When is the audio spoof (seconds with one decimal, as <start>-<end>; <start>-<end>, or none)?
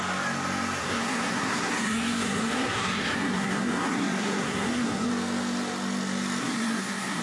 0.8-5.1; 6.4-7.2